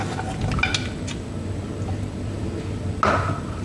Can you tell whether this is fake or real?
real